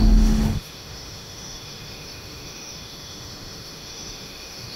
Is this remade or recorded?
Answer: remade